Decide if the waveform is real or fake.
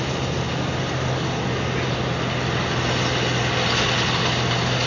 real